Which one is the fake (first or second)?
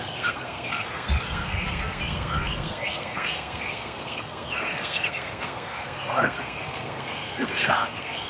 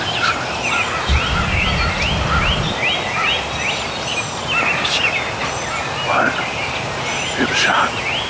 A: first